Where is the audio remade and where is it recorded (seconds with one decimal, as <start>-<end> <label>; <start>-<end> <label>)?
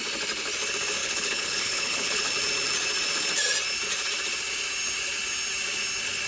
0.0-1.0 recorded; 1.0-2.3 remade; 2.3-6.3 recorded